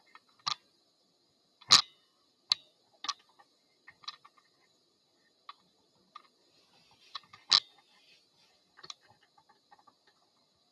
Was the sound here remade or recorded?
recorded